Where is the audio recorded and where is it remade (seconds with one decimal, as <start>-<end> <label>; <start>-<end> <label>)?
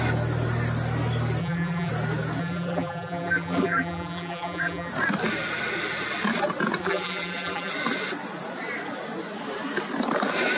0.0-1.4 recorded; 1.4-1.9 remade; 1.9-2.4 recorded; 2.4-4.9 remade; 4.9-6.8 recorded; 6.8-7.7 remade; 7.7-10.6 recorded